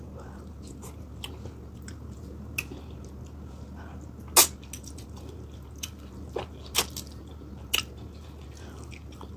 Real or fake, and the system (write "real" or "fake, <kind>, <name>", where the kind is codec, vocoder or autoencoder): real